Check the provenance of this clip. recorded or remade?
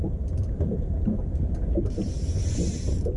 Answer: remade